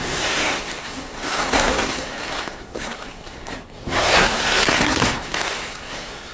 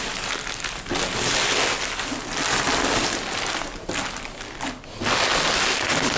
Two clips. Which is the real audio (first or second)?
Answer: second